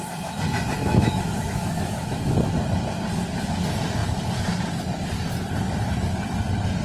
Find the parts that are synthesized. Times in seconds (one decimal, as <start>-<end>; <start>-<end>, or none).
0.8-2.5

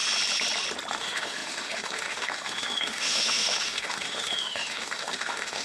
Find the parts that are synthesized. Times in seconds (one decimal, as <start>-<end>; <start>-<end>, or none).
0.9-5.6

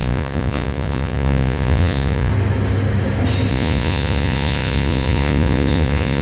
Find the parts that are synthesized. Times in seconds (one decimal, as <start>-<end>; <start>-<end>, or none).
0.0-2.3; 3.5-6.2

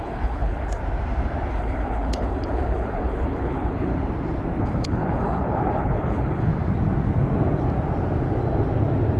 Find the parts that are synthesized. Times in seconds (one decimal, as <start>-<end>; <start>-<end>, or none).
0.0-0.8; 1.5-3.9; 4.6-6.5

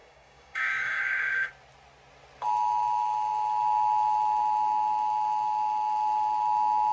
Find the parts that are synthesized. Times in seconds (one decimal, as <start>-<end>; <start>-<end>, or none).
0.0-1.5

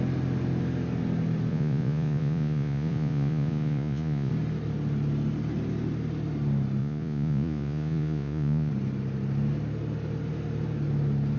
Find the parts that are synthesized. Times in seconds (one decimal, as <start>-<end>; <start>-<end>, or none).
1.5-4.3; 6.8-8.7

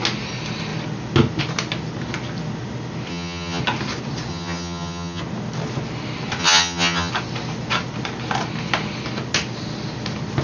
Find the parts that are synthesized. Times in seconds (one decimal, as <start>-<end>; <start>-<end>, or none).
3.1-3.6; 4.3-5.2; 6.4-7.1